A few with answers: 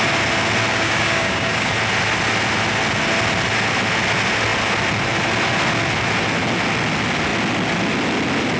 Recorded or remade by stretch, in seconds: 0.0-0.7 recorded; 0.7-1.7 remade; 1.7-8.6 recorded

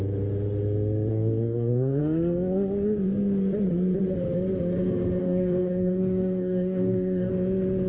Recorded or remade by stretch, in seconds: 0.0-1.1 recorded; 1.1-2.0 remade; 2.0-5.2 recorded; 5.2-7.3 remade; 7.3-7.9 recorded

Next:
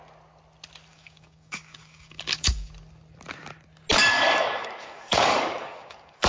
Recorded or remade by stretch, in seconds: 0.0-0.9 recorded; 0.9-2.7 remade; 2.7-4.0 recorded; 4.0-6.3 remade